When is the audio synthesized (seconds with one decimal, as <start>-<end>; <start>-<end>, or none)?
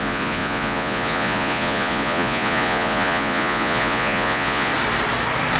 0.0-4.7